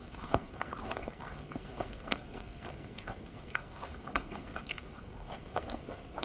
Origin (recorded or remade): remade